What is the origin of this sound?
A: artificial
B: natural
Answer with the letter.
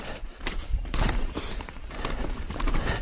A